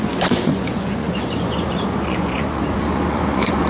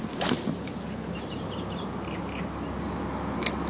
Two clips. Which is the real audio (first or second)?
second